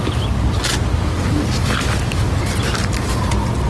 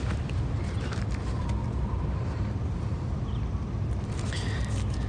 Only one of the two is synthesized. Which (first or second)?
second